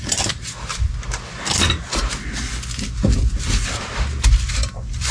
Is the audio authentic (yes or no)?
yes